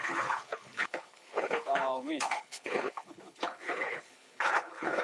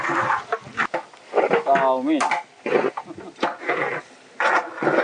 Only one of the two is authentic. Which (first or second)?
second